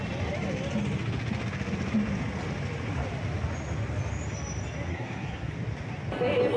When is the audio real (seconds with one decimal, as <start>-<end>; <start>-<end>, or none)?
0.0-4.9; 5.5-6.6